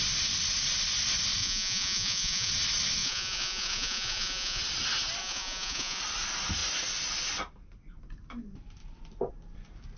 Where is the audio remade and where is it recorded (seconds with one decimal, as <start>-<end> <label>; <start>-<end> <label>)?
0.0-1.4 recorded; 1.4-2.5 remade; 2.5-3.0 recorded; 3.0-4.6 remade; 4.6-5.2 recorded; 5.2-6.0 remade; 6.0-10.0 recorded